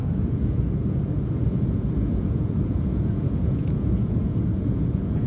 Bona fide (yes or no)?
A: no